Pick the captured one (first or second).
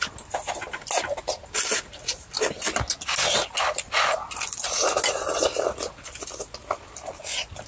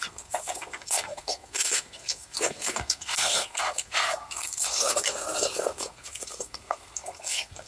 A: first